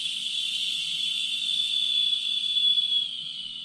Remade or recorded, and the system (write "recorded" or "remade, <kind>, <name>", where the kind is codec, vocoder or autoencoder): recorded